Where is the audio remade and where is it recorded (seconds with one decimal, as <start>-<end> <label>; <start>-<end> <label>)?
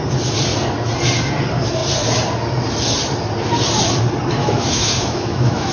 0.0-4.4 recorded; 4.4-5.7 remade